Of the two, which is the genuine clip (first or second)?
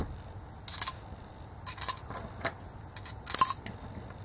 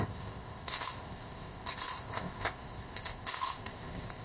first